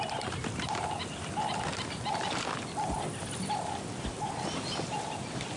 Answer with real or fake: real